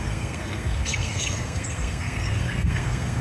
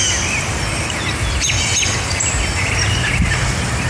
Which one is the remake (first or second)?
first